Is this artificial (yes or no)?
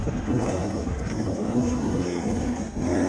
yes